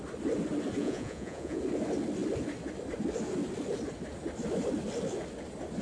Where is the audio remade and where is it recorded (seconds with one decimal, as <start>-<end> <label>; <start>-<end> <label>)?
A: 0.0-0.8 recorded; 0.8-1.6 remade; 1.6-5.8 recorded